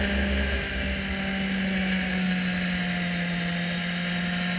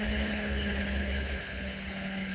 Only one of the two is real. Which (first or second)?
first